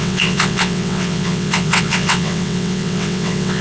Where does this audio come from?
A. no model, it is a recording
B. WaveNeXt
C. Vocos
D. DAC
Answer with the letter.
B